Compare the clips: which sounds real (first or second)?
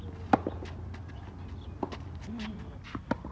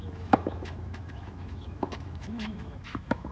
first